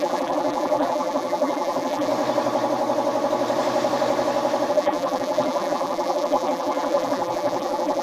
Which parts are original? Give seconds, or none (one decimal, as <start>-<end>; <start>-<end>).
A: 2.1-4.7